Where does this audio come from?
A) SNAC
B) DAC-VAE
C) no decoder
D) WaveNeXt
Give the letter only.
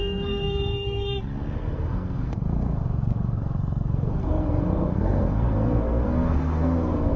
A